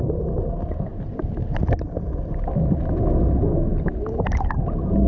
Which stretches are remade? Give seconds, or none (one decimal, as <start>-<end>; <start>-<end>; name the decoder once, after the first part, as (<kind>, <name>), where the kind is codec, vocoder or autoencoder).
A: none